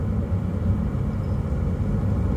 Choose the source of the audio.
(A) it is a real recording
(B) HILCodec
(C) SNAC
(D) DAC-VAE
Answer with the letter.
A